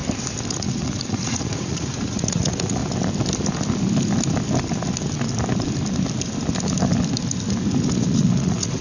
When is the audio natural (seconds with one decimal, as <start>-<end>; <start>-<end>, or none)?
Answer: 0.0-0.5; 2.8-7.8